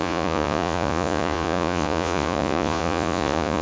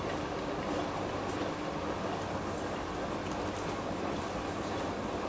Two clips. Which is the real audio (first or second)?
second